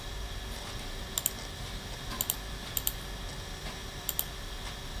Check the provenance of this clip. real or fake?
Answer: real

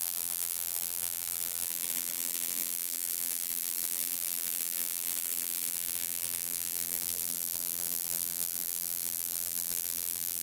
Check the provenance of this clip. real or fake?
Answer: fake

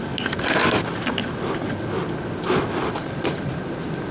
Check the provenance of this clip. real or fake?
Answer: real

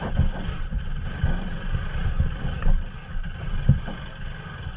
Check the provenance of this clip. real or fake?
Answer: real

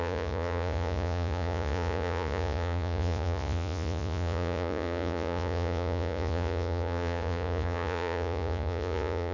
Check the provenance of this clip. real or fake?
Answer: fake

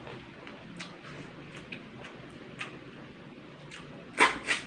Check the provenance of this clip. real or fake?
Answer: real